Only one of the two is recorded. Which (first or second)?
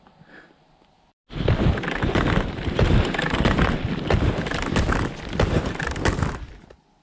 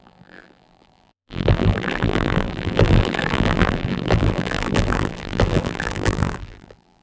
first